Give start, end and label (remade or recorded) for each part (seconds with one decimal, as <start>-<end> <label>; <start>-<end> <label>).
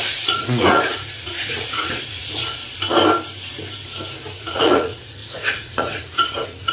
0.0-2.6 remade; 2.6-4.4 recorded; 4.4-6.7 remade